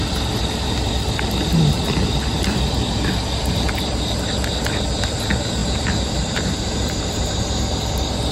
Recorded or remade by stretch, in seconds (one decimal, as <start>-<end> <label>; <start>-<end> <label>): 0.0-5.6 recorded; 5.6-7.4 remade; 7.4-8.3 recorded